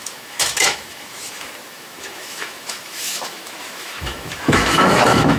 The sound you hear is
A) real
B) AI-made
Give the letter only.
B